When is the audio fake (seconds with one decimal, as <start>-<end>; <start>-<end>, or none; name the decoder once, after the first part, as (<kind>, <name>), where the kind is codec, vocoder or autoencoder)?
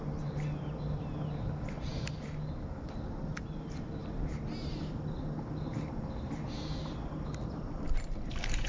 none